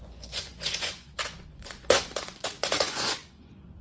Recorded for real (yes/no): no